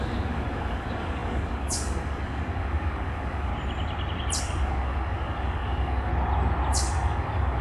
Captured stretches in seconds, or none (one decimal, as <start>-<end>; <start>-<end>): 3.5-4.4; 6.1-6.7